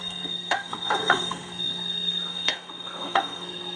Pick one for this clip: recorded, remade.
remade